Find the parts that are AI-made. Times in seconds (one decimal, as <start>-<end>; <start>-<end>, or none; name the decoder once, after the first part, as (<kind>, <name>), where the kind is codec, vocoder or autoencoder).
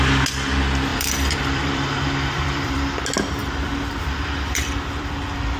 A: 0.9-3.0 (vocoder, BigVGAN v2); 3.4-5.6